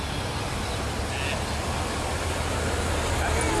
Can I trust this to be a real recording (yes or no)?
yes